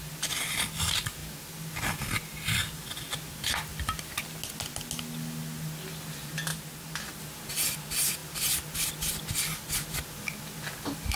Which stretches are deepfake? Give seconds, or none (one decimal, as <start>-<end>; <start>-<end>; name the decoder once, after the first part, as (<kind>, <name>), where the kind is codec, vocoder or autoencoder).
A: none